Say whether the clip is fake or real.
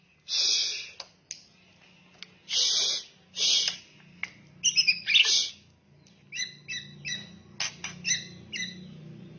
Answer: real